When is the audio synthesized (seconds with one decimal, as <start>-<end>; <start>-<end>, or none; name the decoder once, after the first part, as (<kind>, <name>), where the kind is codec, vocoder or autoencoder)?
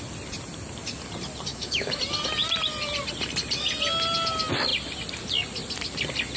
1.5-2.0 (autoencoder, DAC-VAE)